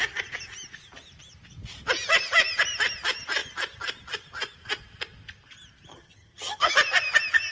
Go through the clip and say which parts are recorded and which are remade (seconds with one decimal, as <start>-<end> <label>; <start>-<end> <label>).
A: 0.0-5.9 recorded; 5.9-6.7 remade; 6.7-7.5 recorded